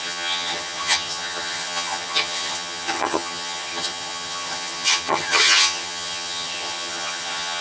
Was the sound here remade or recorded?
remade